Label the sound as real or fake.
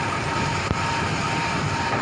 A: fake